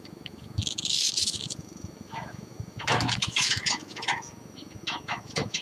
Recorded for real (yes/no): no